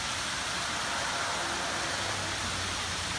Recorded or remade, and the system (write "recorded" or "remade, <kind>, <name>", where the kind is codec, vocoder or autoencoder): recorded